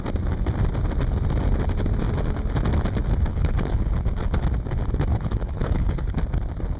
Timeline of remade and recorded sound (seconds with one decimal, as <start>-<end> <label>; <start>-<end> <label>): 0.0-3.3 recorded; 3.3-3.9 remade; 3.9-5.1 recorded; 5.1-6.1 remade; 6.1-6.8 recorded